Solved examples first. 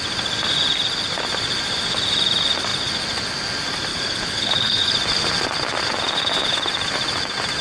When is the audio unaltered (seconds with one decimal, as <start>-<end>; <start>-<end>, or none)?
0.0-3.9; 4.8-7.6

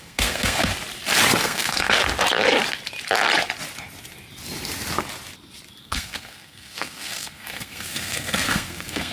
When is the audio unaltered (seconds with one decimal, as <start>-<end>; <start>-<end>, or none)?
0.7-1.4; 2.0-5.8

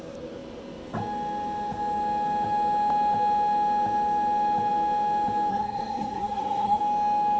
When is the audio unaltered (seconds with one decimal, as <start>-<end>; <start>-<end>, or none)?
0.0-5.5; 6.8-7.4

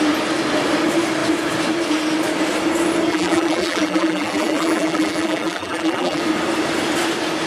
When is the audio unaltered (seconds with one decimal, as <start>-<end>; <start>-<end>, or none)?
0.0-3.1; 6.2-7.5

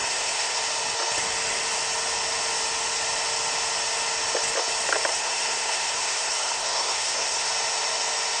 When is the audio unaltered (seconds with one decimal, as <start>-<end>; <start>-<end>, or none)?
0.6-5.1; 7.5-8.4

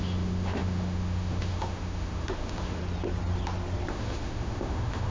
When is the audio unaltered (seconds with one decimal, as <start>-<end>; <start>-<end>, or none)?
2.8-3.9

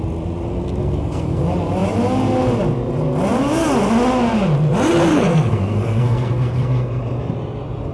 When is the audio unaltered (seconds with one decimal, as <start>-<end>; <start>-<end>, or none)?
0.0-0.8; 1.4-5.1; 7.0-7.9